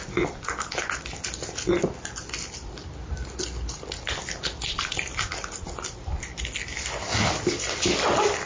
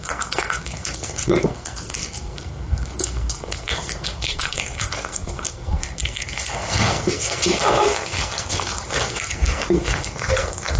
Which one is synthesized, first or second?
second